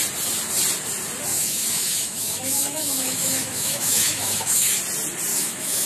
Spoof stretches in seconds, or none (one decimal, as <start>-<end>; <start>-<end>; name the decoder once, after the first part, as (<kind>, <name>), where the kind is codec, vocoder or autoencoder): 1.3-4.8 (autoencoder, DAC-VAE); 5.3-5.9

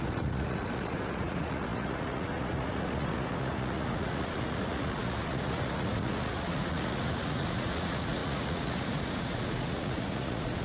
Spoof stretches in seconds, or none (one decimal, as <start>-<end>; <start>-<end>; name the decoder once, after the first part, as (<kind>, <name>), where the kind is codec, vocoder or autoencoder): 0.0-10.6 (vocoder, Vocos)

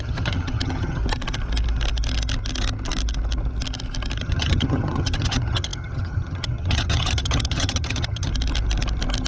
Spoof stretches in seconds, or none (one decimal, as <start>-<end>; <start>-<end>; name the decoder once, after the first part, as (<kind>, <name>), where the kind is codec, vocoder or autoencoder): 0.0-1.0 (vocoder, HiFi-GAN); 4.2-8.3